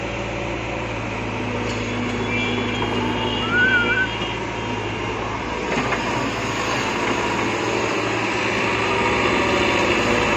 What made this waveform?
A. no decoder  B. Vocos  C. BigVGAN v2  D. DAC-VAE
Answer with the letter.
A